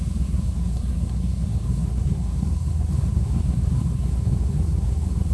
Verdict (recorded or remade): remade